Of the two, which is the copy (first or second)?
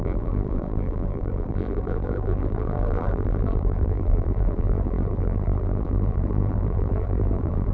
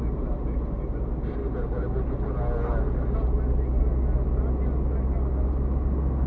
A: first